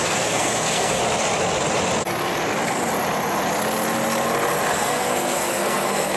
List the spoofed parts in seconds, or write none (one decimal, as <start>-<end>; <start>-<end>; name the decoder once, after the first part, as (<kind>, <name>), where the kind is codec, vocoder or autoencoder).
0.0-1.0 (codec, SNAC); 4.7-6.2